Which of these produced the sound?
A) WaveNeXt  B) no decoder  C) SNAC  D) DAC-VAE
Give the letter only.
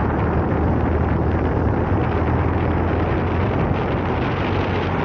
B